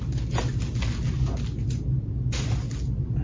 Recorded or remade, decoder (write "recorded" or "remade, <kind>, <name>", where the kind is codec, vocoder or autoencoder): recorded